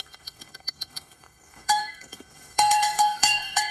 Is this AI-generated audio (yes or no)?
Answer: yes